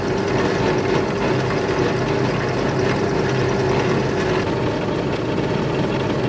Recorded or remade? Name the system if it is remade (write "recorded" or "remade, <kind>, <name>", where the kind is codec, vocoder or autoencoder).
recorded